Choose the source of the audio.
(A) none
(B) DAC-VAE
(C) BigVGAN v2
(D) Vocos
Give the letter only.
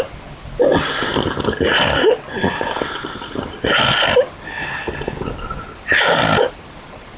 A